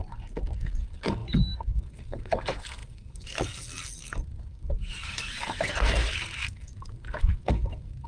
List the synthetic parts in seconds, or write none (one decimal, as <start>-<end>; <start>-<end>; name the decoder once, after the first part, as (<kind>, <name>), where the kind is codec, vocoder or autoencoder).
0.0-8.1 (codec, SNAC)